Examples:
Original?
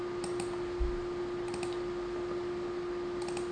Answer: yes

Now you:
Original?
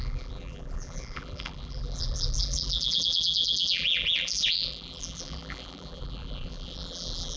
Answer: no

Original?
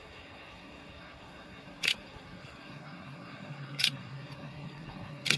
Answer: no